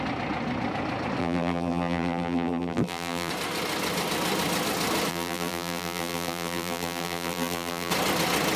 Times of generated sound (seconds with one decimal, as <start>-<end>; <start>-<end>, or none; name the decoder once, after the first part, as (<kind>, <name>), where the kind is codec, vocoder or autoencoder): 1.2-3.3 (vocoder, BigVGAN v2); 5.1-7.9